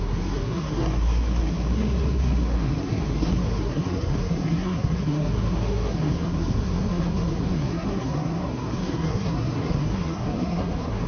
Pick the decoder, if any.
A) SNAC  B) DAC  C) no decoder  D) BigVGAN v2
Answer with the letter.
A